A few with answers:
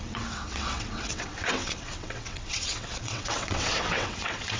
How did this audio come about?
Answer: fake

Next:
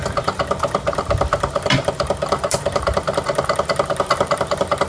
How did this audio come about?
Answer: real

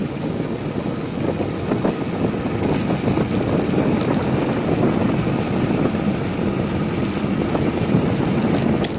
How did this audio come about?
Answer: real